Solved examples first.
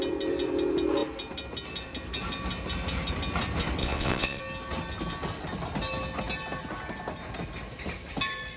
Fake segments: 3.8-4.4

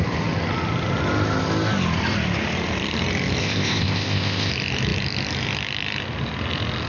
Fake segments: 3.4-4.5

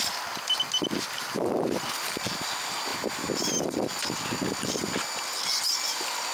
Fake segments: none

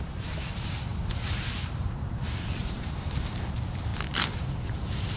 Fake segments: 0.0-3.9; 4.4-5.2

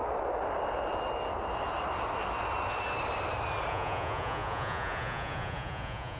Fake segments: 3.7-6.2

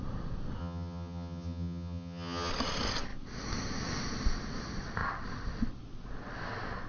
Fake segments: 0.6-2.5